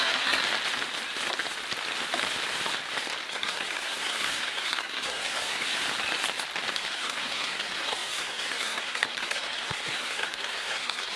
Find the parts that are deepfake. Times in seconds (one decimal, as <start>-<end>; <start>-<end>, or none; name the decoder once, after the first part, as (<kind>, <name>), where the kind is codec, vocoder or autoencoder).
0.0-0.4 (codec, SNAC); 3.3-5.8; 6.7-11.2